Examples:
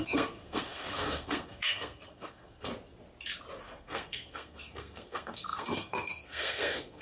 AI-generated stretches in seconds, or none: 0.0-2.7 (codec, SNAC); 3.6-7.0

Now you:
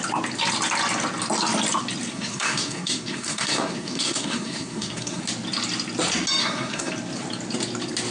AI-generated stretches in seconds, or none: 2.1-5.2 (codec, SNAC); 6.4-6.9